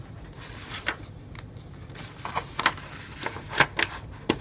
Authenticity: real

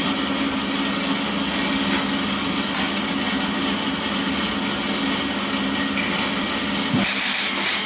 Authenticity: real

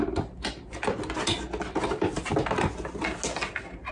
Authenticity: real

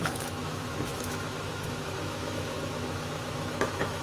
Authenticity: fake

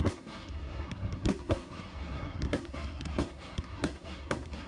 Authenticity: fake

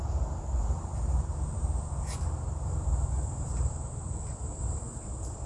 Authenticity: fake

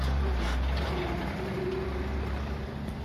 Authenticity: real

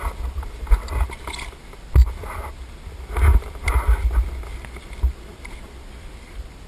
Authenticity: real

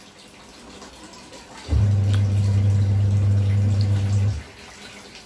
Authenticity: real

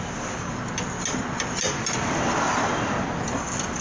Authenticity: real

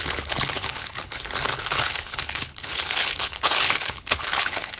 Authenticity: fake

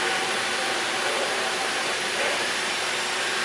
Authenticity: real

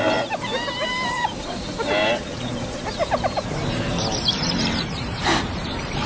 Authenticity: fake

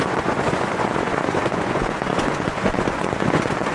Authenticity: fake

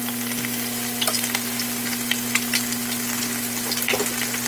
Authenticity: real